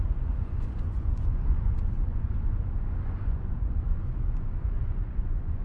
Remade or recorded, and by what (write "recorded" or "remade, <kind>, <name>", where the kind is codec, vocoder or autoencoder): remade, vocoder, Vocos